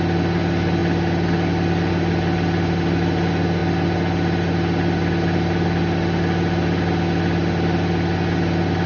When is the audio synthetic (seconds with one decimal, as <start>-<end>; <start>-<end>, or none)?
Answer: none